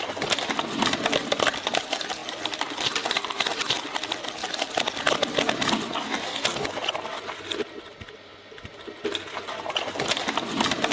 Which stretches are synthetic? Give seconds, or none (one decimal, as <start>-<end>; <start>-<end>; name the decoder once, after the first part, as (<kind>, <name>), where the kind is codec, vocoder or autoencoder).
none